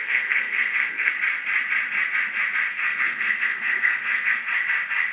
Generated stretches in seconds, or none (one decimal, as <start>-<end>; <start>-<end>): 0.0-1.1; 2.7-4.5